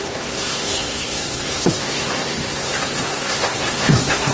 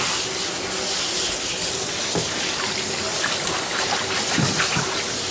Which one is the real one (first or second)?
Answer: second